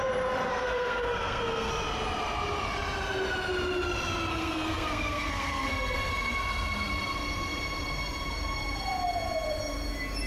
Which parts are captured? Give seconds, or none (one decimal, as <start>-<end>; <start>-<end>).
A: 0.0-0.5; 1.7-4.3; 6.1-10.3